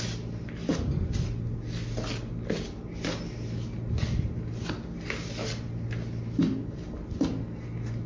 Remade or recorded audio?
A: recorded